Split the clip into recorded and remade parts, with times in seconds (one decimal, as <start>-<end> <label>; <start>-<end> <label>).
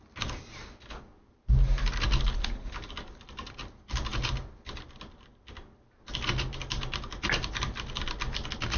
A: 0.0-8.8 recorded